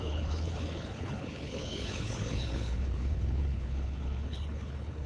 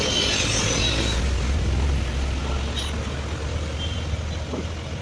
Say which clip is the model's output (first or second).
first